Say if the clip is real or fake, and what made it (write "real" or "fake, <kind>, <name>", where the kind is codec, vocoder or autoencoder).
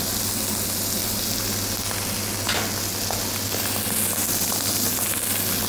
real